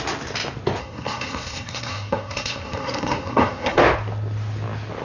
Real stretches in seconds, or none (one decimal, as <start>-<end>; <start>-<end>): 0.0-0.8; 3.8-5.0